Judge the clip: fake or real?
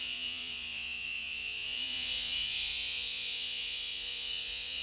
fake